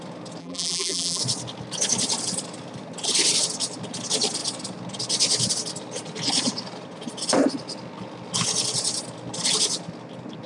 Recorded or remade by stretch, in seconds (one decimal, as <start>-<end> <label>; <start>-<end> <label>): 0.0-0.4 recorded; 0.4-1.2 remade; 1.2-10.5 recorded